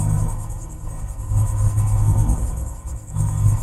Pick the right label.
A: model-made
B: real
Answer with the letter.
A